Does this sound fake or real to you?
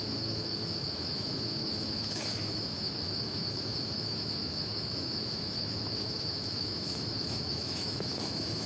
fake